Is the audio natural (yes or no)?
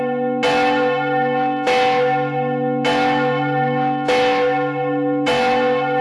yes